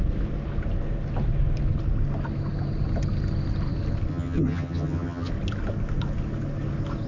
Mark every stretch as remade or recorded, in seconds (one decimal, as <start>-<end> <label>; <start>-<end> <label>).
0.0-4.1 recorded; 4.1-5.3 remade; 5.3-7.1 recorded